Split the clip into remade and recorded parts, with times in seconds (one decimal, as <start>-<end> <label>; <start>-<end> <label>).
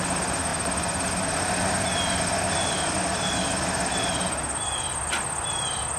0.0-6.0 recorded